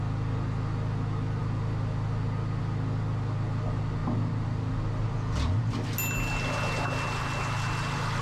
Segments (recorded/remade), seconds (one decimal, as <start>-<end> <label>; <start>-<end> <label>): 0.0-8.2 recorded